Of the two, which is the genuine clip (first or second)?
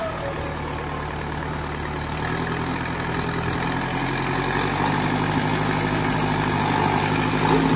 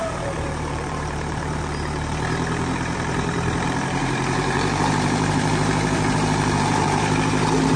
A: first